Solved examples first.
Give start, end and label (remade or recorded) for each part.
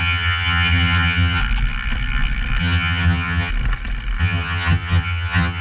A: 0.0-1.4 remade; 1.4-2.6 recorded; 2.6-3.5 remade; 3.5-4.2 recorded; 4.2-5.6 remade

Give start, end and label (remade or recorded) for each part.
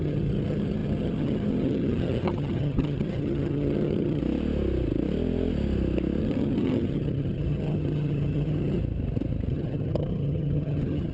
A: 0.0-4.2 remade; 4.2-6.2 recorded; 6.2-8.8 remade; 8.8-9.5 recorded; 9.5-11.1 remade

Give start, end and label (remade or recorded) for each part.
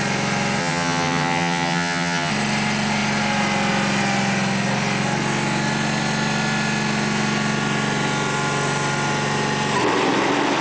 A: 0.0-0.6 recorded; 0.6-2.3 remade; 2.3-10.6 recorded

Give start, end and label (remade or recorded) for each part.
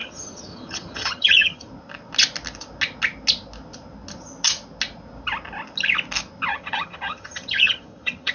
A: 0.0-1.7 remade; 1.7-6.5 recorded; 6.5-8.3 remade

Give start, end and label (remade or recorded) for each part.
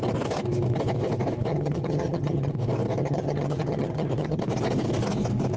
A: 0.0-1.5 recorded; 1.5-2.5 remade; 2.5-3.0 recorded; 3.0-4.4 remade; 4.4-5.6 recorded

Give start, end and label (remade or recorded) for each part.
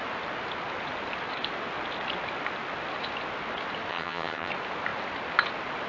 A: 0.0-3.9 recorded; 3.9-4.5 remade; 4.5-5.9 recorded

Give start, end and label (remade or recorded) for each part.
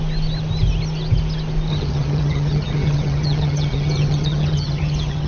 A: 0.0-1.7 recorded; 1.7-5.3 remade